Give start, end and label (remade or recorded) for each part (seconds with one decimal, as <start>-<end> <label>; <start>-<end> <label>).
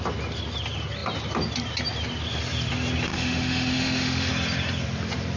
0.0-3.1 recorded; 3.1-4.3 remade; 4.3-5.4 recorded